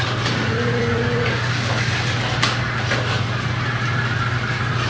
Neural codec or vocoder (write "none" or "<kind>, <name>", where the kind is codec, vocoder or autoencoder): none